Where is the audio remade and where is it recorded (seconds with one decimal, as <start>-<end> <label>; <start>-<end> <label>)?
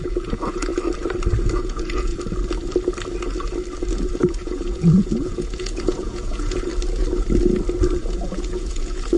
0.0-0.7 remade; 0.7-1.5 recorded; 1.5-2.1 remade; 2.1-4.3 recorded; 4.3-6.7 remade; 6.7-8.0 recorded; 8.0-9.2 remade